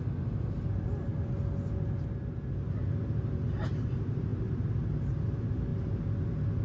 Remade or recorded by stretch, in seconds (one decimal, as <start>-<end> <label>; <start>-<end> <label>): 0.0-6.6 recorded